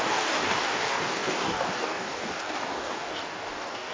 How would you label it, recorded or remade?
remade